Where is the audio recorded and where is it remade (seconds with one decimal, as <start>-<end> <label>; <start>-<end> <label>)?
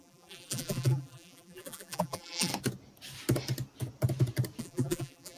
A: 0.0-2.5 remade; 2.5-4.6 recorded; 4.6-5.4 remade